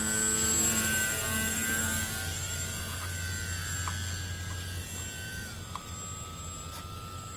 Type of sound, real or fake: real